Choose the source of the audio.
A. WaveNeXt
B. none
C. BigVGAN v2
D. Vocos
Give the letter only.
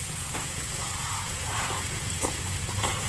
D